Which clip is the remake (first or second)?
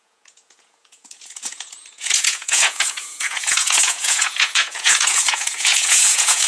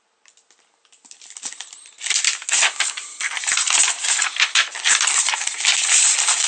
first